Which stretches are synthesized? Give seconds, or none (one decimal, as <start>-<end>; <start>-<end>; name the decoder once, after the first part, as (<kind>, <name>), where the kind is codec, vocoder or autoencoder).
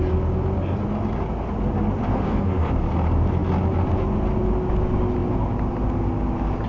2.1-2.7 (codec, SNAC)